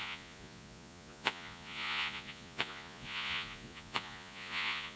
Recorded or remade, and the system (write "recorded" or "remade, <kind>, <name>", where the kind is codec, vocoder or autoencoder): remade, vocoder, Vocos